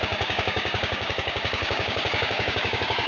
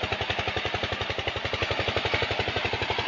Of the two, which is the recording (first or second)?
second